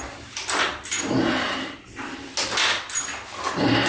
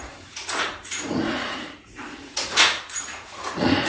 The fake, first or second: second